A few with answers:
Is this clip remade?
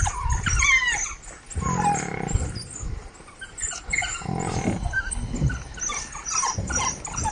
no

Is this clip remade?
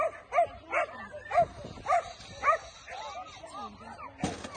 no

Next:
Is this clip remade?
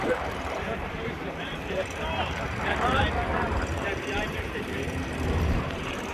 yes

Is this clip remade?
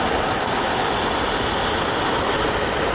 no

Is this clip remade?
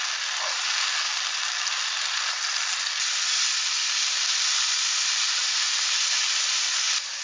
no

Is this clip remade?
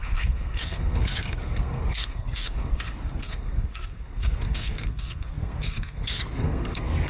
yes